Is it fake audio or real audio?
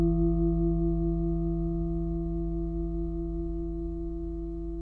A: real